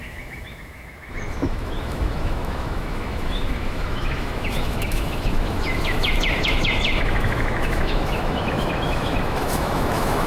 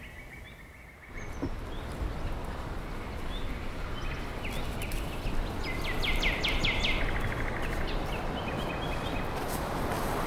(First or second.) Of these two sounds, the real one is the second